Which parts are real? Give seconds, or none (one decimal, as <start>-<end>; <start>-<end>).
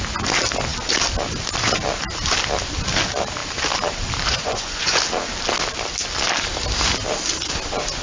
0.0-4.3; 5.0-8.0